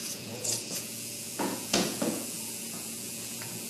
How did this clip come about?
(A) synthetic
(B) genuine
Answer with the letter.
A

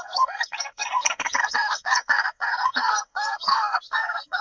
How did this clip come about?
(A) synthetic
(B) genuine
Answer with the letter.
A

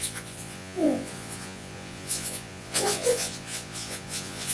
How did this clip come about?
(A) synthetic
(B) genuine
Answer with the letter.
A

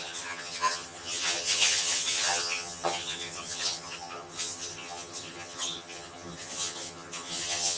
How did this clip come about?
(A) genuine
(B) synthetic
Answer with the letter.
B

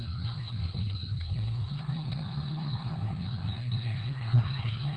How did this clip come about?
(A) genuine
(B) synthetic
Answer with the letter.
B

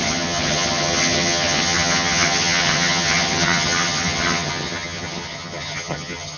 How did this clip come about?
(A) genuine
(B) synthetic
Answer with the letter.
B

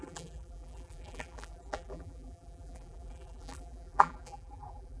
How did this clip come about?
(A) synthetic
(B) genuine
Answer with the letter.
A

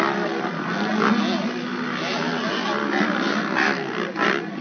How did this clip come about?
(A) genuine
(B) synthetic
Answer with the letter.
A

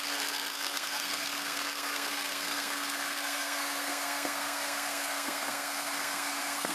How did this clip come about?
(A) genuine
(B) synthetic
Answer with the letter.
B